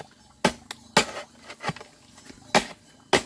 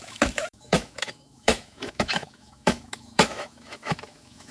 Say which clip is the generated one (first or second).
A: second